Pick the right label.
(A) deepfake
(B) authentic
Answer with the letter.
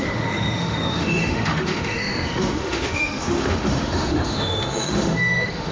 A